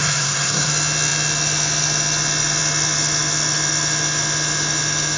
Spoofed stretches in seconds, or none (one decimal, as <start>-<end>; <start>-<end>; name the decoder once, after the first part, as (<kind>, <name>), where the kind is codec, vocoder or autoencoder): 0.0-0.7 (codec, SNAC)